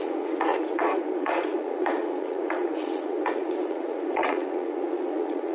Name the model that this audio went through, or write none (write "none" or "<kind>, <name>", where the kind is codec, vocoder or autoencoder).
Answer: vocoder, Vocos